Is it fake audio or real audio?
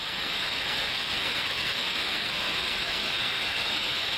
fake